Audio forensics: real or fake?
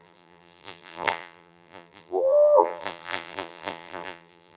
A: fake